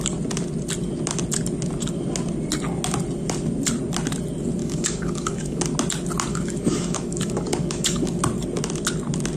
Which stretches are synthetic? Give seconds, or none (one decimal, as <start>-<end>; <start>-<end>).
4.6-5.6; 6.3-8.2